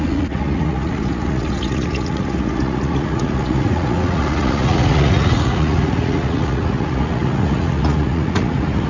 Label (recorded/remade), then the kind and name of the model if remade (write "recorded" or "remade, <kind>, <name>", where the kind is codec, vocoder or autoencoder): remade, vocoder, Vocos